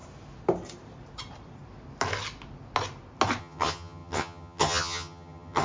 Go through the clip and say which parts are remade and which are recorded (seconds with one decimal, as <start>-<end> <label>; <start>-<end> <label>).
0.0-3.4 recorded; 3.4-5.6 remade